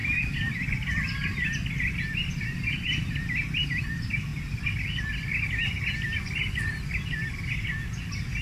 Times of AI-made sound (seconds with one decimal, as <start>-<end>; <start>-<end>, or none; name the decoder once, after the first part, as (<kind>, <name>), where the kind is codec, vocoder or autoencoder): none